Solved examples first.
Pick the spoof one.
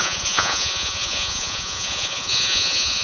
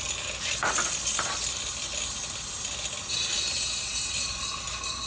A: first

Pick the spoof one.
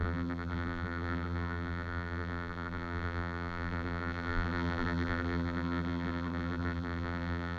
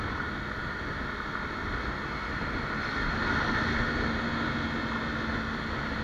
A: first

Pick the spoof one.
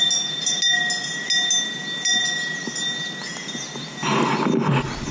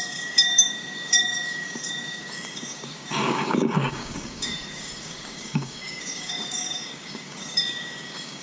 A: second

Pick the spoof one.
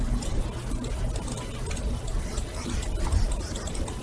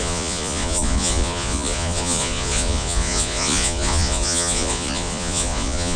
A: second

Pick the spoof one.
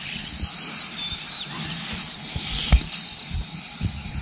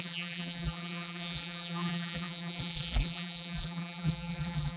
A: second